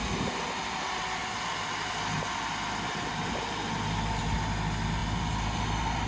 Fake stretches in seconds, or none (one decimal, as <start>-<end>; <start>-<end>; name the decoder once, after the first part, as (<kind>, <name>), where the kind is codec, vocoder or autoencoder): none